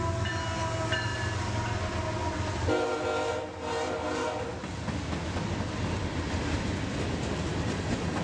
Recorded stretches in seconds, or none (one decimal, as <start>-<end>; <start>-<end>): 0.0-8.2